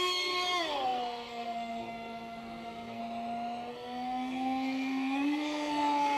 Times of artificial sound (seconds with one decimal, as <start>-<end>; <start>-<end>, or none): 0.0-3.0; 3.7-6.2